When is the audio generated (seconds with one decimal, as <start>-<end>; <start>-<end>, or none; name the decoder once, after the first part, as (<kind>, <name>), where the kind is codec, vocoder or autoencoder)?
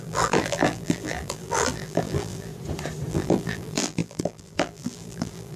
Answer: 0.0-2.5 (vocoder, BigVGAN v2); 3.1-5.6